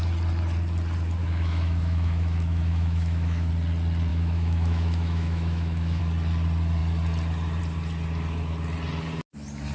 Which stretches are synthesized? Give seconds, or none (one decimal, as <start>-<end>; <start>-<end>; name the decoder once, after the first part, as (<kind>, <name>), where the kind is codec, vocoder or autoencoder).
1.2-3.5 (autoencoder, DAC-VAE); 4.1-6.0